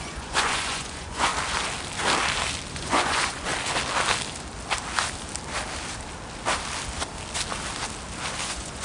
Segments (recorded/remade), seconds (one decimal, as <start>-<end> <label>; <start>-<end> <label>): 0.0-1.3 remade; 1.3-2.7 recorded; 2.7-3.5 remade; 3.5-8.4 recorded; 8.4-8.8 remade